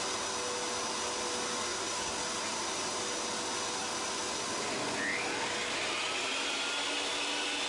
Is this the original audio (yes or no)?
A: yes